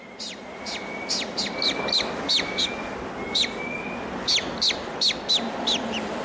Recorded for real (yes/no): yes